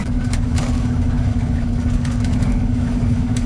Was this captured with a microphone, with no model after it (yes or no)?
no